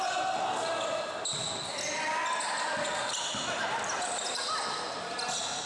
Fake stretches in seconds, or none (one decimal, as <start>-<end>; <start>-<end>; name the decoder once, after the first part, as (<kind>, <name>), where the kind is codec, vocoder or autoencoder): none